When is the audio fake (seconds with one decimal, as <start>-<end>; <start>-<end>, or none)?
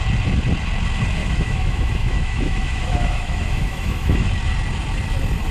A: 1.2-4.3